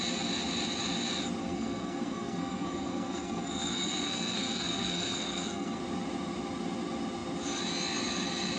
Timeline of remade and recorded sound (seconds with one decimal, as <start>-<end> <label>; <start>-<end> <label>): 0.0-1.4 recorded; 1.4-5.8 remade; 5.8-8.6 recorded

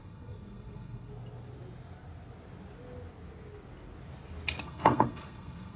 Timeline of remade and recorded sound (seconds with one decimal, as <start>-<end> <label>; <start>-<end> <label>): 0.0-1.1 remade; 1.1-4.6 recorded; 4.6-5.8 remade

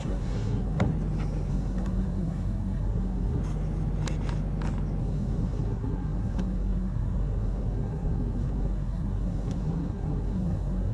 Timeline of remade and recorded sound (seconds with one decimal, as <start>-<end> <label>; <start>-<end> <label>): 0.0-0.9 remade; 0.9-1.5 recorded; 1.5-3.4 remade; 3.4-5.0 recorded; 5.0-10.9 remade

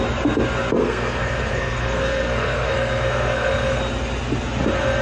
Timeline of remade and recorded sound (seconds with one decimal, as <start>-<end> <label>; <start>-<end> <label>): 0.0-0.8 recorded; 0.8-3.8 remade; 3.8-5.0 recorded